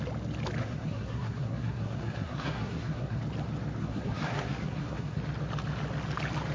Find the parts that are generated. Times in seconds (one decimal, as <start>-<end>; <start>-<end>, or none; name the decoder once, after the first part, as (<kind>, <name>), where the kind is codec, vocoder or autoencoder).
0.6-3.2 (codec, SNAC); 3.8-5.2